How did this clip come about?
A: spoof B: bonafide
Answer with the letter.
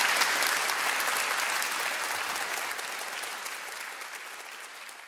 B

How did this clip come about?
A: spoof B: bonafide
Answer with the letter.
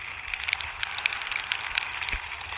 B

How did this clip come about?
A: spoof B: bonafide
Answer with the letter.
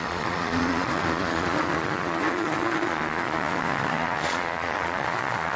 A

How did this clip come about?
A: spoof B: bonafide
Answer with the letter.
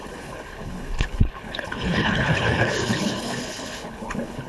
A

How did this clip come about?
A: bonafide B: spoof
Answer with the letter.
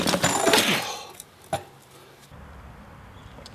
A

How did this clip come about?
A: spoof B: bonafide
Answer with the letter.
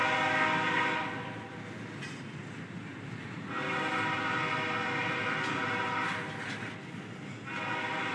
B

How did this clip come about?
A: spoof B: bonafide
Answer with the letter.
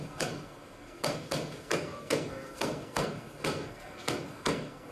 A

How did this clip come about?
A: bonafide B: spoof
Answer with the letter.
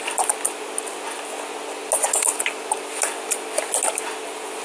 A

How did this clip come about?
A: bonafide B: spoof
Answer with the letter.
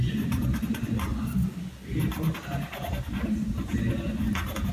A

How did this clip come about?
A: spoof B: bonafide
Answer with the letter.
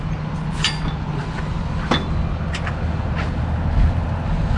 B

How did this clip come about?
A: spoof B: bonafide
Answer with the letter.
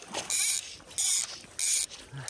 B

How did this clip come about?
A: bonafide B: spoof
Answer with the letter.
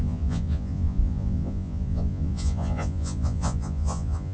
B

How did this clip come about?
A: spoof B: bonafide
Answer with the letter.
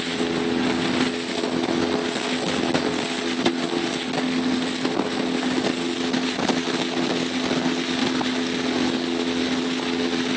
B